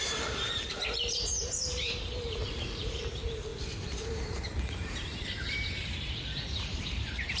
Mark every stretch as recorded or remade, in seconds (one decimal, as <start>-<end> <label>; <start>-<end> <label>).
0.0-7.4 remade